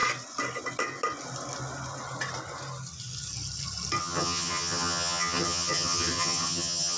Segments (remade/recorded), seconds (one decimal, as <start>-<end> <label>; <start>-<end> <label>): 0.0-4.0 recorded; 4.0-7.0 remade